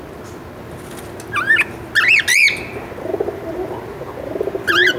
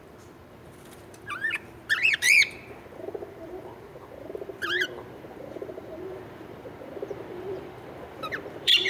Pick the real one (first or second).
first